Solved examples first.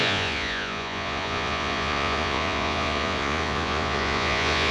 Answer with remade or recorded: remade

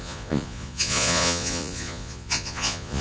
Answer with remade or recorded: remade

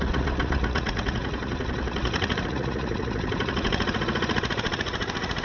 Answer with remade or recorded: remade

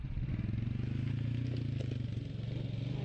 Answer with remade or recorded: recorded